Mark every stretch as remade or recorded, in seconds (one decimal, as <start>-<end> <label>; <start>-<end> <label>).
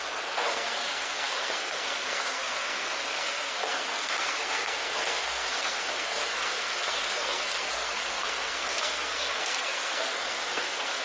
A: 0.0-11.0 remade